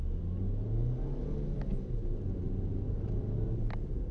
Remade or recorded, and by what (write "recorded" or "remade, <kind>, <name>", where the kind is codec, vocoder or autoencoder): recorded